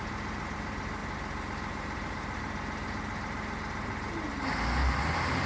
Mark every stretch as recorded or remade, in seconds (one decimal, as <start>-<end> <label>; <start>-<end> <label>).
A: 0.0-4.8 recorded; 4.8-5.5 remade